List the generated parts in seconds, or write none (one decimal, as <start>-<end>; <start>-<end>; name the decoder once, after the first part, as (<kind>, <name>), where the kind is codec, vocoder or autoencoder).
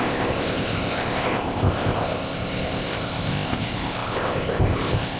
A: 0.0-5.2 (codec, ZipCodec)